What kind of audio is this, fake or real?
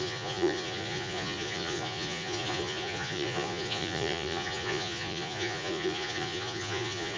fake